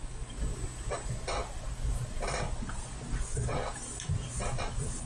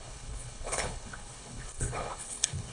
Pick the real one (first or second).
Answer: first